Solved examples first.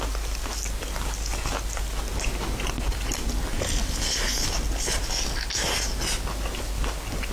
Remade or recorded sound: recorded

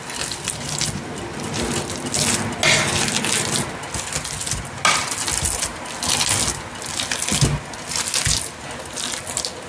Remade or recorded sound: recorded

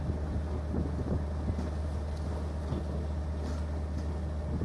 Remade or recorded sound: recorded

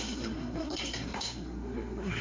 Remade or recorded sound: remade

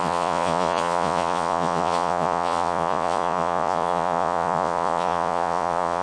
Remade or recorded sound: remade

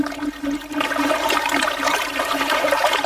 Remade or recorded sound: remade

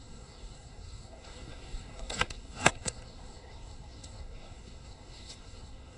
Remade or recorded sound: remade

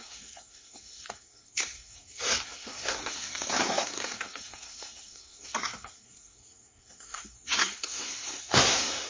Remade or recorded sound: remade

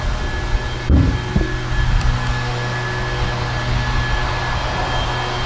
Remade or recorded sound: recorded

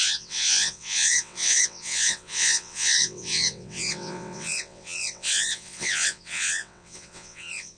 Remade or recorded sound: remade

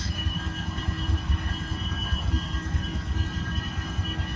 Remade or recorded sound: remade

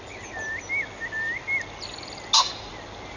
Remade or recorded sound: recorded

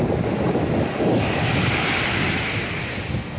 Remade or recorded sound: recorded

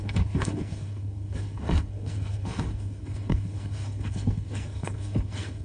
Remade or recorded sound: remade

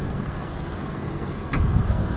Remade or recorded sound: remade